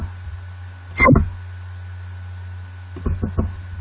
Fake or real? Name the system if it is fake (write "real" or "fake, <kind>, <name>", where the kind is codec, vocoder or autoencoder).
real